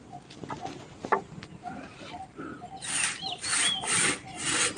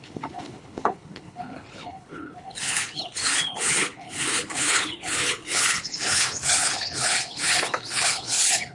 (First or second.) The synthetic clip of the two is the second